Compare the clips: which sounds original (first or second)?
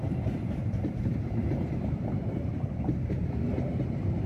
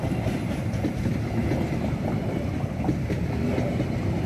second